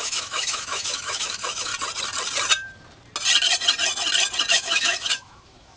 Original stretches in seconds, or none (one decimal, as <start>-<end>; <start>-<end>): 1.7-4.5